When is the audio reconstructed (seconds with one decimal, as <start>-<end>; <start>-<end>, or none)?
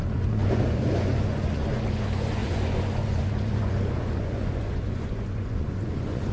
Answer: 0.0-6.3